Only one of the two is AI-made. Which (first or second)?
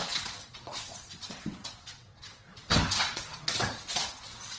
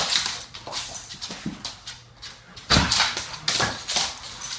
first